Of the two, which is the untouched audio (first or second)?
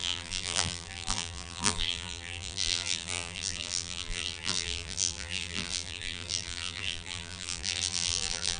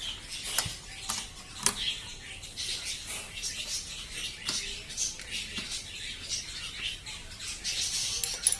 second